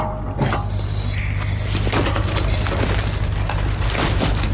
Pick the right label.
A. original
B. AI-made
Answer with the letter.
A